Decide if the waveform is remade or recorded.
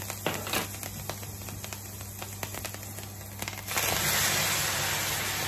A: recorded